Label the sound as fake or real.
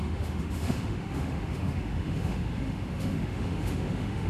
fake